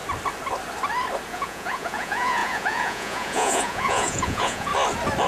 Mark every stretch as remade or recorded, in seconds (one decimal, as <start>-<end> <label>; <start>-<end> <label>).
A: 0.0-1.3 recorded; 1.3-4.7 remade; 4.7-5.3 recorded